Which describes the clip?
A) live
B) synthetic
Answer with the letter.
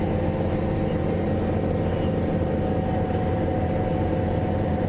B